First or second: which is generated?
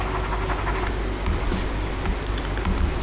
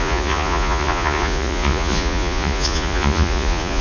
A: second